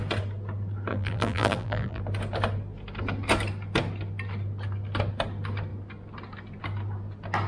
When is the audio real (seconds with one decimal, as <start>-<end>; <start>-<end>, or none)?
0.0-0.9; 2.0-7.5

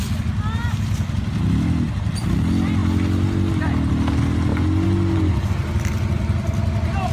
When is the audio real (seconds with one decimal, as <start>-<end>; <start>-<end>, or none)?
0.0-7.1

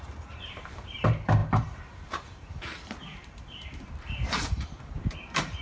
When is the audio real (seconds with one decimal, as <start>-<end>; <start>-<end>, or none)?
none

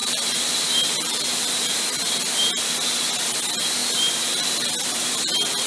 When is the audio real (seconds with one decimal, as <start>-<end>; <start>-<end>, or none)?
2.2-3.8; 5.1-5.7

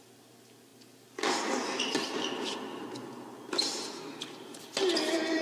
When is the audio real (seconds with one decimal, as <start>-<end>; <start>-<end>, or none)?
0.0-5.4

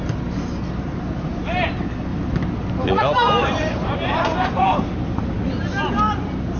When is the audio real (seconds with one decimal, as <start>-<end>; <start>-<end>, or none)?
0.0-3.4; 5.4-6.6